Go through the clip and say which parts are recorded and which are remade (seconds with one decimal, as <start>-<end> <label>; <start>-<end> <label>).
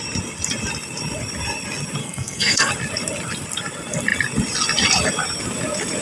0.0-2.0 recorded; 2.0-2.7 remade; 2.7-6.0 recorded